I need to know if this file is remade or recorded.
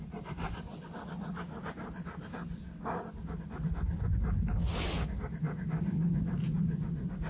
recorded